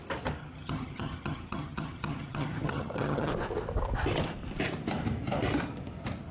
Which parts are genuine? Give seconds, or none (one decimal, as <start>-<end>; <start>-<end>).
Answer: 0.0-0.4; 3.3-6.3